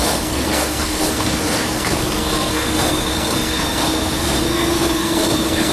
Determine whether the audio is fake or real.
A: fake